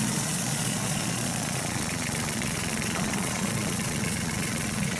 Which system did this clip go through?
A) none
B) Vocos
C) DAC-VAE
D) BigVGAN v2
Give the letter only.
B